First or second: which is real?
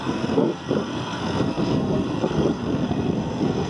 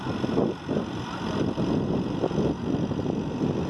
second